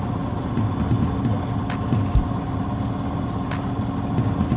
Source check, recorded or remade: recorded